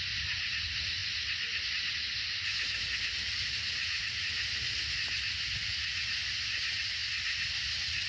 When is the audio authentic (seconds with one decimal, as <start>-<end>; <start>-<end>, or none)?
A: 0.0-8.1